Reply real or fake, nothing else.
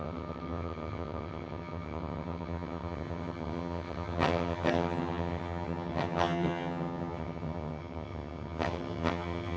fake